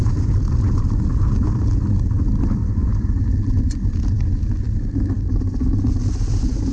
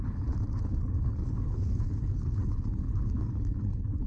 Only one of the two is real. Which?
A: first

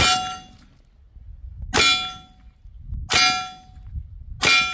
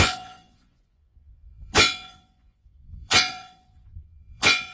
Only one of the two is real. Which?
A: first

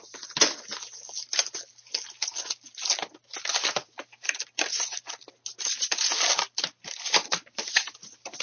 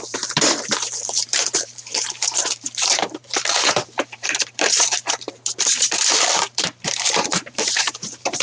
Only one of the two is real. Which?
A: first